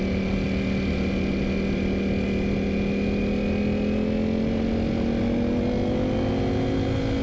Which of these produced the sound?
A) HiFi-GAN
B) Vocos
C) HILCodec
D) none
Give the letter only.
D